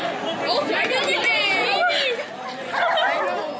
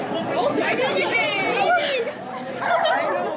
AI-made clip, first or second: second